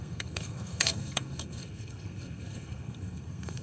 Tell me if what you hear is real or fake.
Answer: fake